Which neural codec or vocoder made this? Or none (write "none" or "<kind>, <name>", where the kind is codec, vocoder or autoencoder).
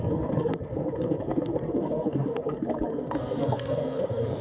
codec, SNAC